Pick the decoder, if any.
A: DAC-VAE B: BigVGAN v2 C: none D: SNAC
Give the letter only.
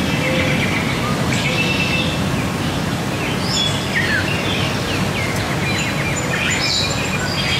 C